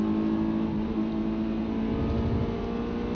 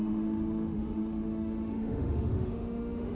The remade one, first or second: second